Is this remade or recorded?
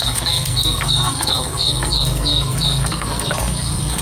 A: remade